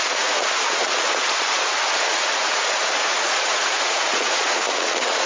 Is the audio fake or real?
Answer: fake